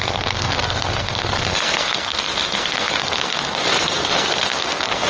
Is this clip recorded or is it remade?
remade